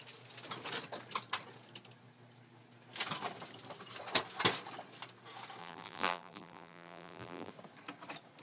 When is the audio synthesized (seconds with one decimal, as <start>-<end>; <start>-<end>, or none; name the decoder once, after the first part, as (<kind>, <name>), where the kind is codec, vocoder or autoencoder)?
5.6-7.5 (vocoder, BigVGAN v2)

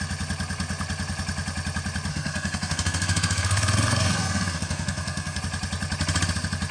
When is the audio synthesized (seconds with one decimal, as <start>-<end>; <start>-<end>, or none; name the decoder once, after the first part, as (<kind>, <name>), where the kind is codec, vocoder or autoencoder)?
2.1-5.4 (codec, SNAC)